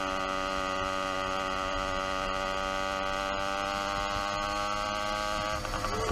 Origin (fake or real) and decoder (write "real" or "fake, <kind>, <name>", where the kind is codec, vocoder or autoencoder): real